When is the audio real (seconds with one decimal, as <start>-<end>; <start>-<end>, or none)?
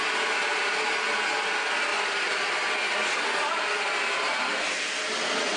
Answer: 0.0-5.6